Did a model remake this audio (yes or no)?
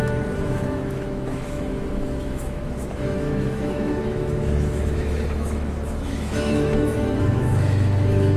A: yes